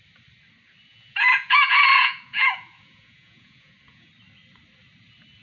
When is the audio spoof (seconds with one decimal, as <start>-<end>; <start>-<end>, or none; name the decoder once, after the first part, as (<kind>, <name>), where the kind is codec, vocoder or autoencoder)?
0.9-4.1 (vocoder, Vocos)